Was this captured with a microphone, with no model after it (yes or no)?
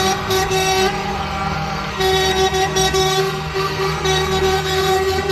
no